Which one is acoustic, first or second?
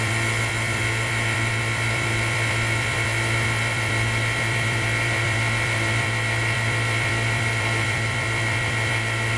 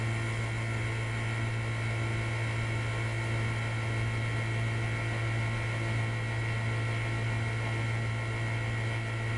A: second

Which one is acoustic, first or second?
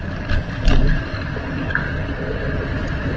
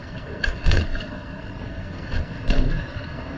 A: first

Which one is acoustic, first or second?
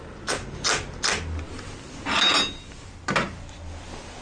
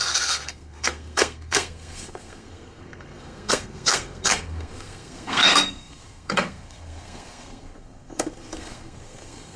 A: first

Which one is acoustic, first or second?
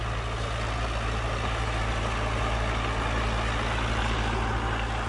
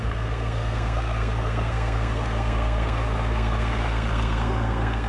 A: first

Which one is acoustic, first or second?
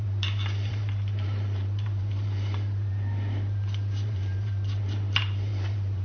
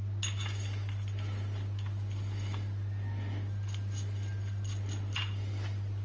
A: second